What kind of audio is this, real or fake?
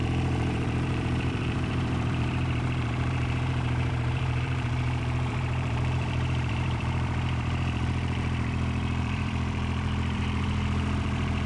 fake